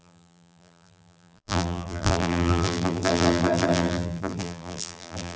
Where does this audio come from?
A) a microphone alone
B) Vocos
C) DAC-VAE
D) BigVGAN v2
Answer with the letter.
D